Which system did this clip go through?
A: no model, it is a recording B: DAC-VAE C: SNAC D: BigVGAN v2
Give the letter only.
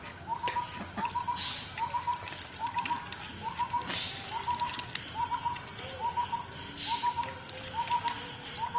A